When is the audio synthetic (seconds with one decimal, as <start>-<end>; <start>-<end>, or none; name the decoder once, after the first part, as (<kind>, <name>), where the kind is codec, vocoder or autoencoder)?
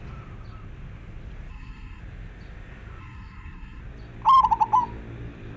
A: 1.5-2.0 (codec, SNAC); 3.0-3.8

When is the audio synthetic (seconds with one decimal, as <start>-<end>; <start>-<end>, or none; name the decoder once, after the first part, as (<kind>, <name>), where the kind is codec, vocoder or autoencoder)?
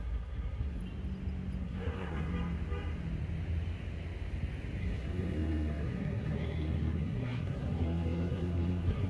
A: 0.0-0.8 (codec, SNAC); 1.6-2.3; 4.8-9.1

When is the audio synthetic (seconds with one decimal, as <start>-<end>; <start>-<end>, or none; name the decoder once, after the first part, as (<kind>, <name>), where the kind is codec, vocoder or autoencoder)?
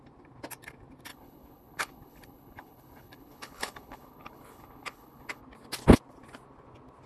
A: 1.1-5.4 (codec, HILCodec)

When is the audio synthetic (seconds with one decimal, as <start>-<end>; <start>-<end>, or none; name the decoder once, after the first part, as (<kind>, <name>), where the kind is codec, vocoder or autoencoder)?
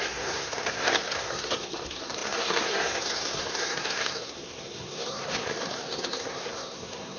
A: 0.0-7.2 (codec, SNAC)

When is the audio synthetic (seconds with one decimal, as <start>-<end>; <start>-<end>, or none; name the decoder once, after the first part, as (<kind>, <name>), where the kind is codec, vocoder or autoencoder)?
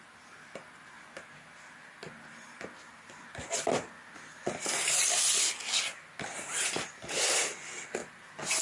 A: none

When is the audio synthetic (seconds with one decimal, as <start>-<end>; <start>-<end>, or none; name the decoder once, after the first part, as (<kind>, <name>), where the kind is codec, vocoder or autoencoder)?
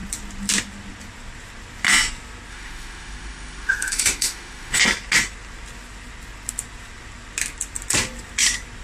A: 2.5-4.8 (autoencoder, DAC-VAE)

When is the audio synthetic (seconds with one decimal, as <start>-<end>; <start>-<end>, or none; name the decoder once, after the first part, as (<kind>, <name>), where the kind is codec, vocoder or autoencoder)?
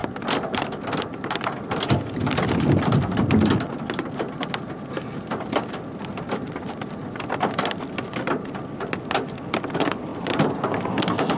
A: none